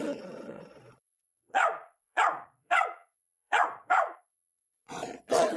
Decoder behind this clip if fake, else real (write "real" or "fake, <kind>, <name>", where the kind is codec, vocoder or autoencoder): fake, vocoder, Vocos